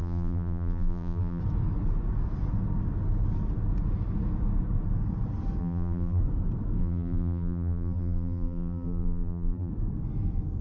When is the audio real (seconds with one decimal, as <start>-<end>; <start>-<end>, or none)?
1.4-5.6; 6.2-6.8; 9.7-10.6